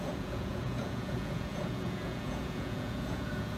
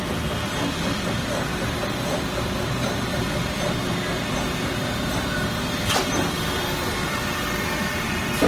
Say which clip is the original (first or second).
second